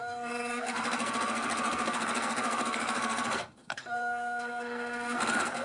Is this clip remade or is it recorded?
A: remade